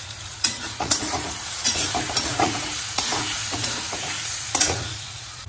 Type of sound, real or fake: fake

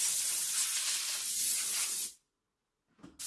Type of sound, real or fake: real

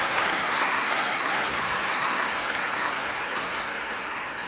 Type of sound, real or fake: fake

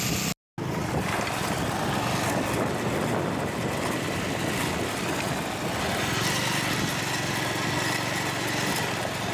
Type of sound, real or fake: real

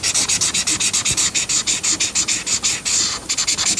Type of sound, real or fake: real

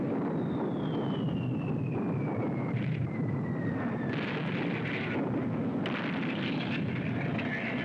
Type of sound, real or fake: real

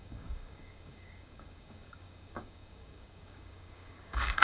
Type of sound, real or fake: fake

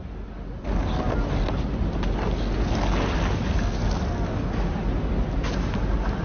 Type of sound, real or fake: real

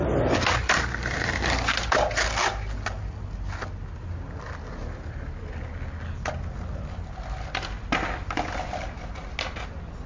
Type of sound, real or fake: real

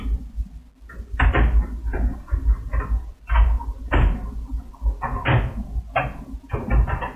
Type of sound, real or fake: real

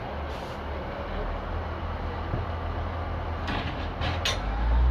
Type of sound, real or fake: real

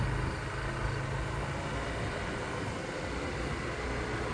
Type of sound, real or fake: real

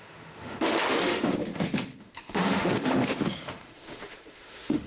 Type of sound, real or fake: fake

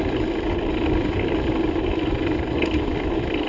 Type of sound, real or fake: real